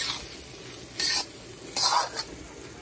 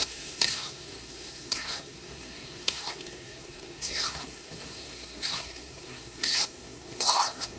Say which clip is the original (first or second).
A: first